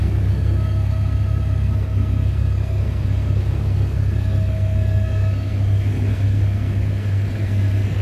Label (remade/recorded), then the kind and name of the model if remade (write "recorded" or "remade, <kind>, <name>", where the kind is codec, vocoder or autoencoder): remade, codec, SNAC